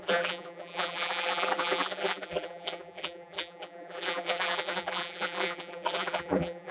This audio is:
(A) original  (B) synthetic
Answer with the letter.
B